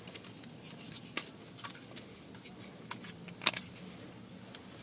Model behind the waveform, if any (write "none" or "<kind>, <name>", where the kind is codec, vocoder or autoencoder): none